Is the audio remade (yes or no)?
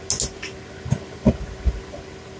no